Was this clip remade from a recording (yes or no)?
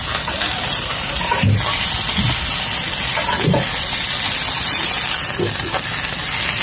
no